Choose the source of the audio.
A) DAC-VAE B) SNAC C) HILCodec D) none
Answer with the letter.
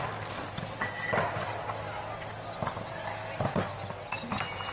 D